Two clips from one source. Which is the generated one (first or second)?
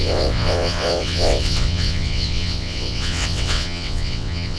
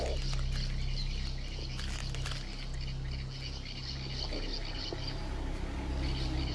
first